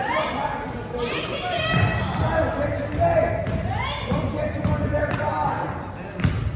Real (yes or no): yes